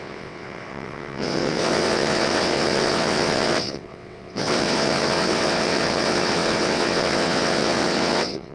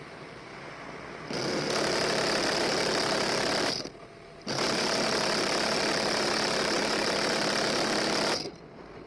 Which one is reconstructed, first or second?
first